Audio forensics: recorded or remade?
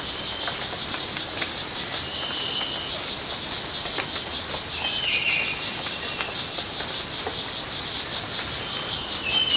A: recorded